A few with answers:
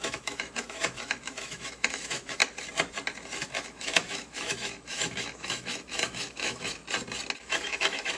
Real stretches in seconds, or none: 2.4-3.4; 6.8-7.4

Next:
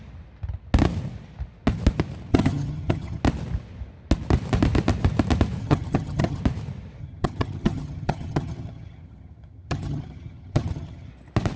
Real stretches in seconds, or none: 0.0-2.3; 3.2-5.6; 6.4-7.0; 11.1-11.6

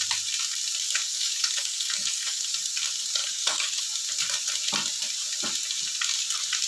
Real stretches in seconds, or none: 0.0-1.0; 2.5-3.2; 3.8-6.7

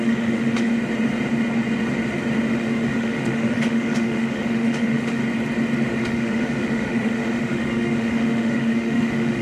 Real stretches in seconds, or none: 0.7-2.5; 5.2-6.0